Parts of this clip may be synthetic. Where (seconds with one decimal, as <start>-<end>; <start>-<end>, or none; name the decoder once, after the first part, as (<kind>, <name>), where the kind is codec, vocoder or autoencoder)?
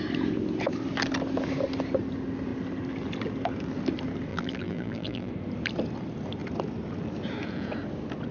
4.3-5.3 (vocoder, BigVGAN v2)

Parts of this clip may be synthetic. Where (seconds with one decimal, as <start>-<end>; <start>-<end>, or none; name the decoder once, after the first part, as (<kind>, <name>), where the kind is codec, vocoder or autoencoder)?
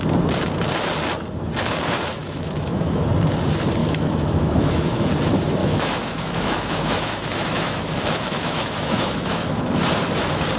2.2-3.0 (autoencoder, DAC-VAE); 3.8-5.1; 5.6-9.6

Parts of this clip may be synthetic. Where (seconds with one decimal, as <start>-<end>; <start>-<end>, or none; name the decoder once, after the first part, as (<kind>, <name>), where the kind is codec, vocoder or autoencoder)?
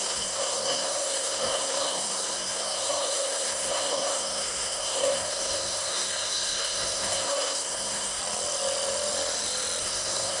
0.0-8.2 (codec, SNAC); 9.8-10.4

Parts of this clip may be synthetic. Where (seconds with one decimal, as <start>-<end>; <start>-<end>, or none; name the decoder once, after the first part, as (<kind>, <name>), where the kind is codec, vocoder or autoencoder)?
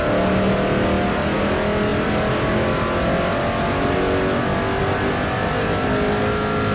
none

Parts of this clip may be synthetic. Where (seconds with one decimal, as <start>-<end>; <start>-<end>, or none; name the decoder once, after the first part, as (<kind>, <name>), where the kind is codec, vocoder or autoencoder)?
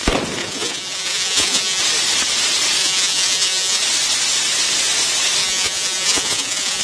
0.4-1.8 (vocoder, Vocos); 2.8-3.8; 5.4-6.8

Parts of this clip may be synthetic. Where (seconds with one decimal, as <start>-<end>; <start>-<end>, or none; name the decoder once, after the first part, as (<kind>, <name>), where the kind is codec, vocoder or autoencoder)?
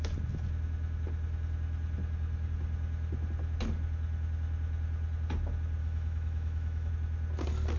5.8-6.9 (autoencoder, DAC-VAE)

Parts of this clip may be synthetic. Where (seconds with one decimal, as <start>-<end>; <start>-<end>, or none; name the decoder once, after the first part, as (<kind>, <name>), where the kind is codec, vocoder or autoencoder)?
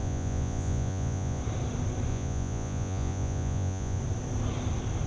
0.0-1.4 (vocoder, Vocos); 2.1-4.0